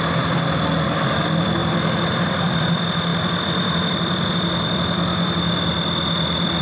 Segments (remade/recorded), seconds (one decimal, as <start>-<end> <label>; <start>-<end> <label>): 0.0-6.6 remade